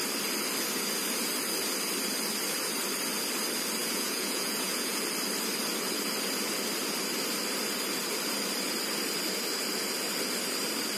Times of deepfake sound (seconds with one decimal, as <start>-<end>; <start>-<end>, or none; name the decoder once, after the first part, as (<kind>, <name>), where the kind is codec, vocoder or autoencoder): 3.8-5.0 (vocoder, Vocos)